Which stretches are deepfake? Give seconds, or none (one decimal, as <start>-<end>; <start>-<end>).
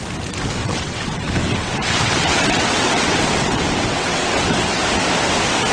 0.6-1.2; 1.6-4.8